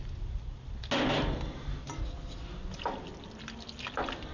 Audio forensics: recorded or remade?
recorded